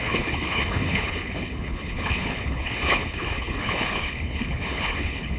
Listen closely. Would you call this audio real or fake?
fake